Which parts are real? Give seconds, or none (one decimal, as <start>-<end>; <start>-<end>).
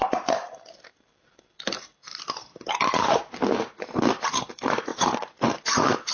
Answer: 0.0-2.5; 4.3-4.9; 5.6-6.1